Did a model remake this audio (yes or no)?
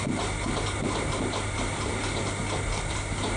no